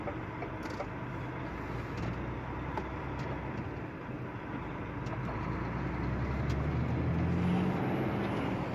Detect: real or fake real